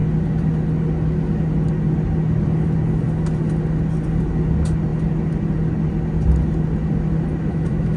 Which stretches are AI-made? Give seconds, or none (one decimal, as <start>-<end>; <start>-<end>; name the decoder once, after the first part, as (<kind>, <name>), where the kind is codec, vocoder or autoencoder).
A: 7.5-8.0 (autoencoder, DAC-VAE)